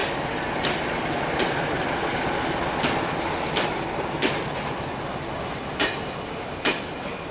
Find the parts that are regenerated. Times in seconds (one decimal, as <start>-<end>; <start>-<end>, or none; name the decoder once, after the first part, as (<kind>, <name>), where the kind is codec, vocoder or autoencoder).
none